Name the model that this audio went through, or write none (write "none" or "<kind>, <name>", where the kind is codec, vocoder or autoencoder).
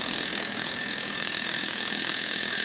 codec, DAC